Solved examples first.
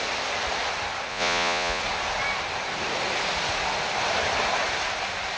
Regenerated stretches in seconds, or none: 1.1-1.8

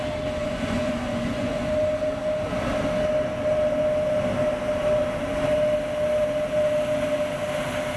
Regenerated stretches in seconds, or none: 0.4-1.7

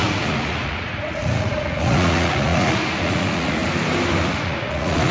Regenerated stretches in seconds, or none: 0.0-3.6; 4.2-5.1

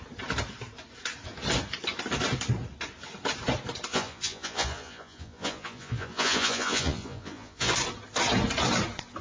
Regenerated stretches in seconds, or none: 3.9-7.7